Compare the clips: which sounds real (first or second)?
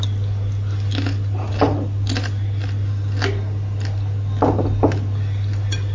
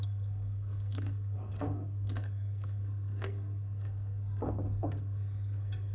first